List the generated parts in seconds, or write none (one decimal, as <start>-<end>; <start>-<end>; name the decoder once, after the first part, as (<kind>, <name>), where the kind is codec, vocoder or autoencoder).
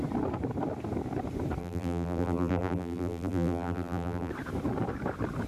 1.6-4.3 (vocoder, BigVGAN v2)